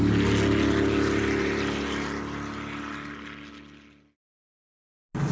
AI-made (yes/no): no